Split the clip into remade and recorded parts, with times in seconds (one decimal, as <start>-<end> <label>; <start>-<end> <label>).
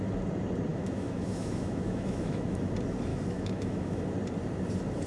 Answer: 0.0-0.7 recorded; 0.7-2.6 remade; 2.6-3.1 recorded; 3.1-4.0 remade; 4.0-5.1 recorded